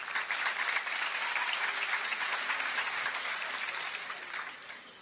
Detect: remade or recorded recorded